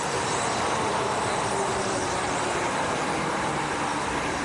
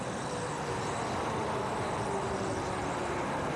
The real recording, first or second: second